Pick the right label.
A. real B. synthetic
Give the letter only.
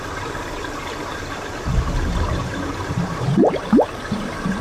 B